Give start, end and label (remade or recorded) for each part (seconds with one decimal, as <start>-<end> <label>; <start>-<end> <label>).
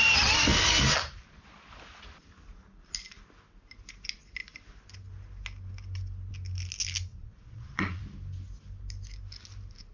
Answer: 0.0-7.1 recorded; 7.1-8.0 remade; 8.0-9.9 recorded